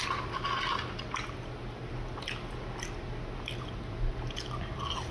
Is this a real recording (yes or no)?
yes